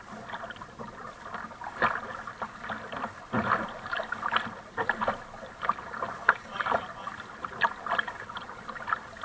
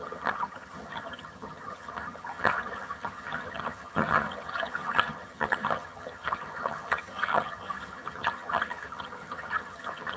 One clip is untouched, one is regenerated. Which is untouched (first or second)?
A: first